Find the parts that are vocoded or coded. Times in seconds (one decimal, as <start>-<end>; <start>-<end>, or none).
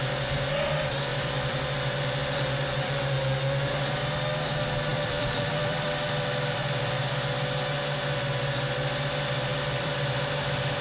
1.1-3.7; 4.9-7.0; 9.5-10.3